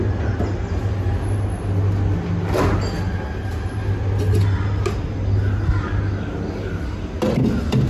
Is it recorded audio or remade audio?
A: recorded